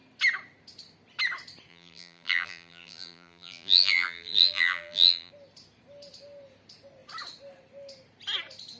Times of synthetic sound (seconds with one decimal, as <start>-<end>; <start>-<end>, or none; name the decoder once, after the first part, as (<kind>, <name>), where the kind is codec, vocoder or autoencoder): 1.7-5.3 (vocoder, BigVGAN v2)